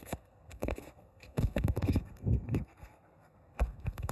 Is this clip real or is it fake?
fake